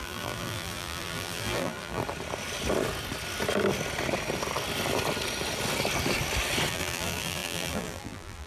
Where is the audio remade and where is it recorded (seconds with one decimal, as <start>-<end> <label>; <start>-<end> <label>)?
0.0-2.0 remade; 2.0-6.7 recorded; 6.7-8.5 remade